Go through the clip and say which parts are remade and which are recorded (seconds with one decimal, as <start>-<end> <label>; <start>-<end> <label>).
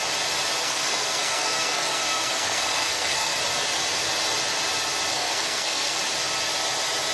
0.0-0.6 recorded; 0.6-3.4 remade; 3.4-5.1 recorded; 5.1-6.0 remade; 6.0-7.1 recorded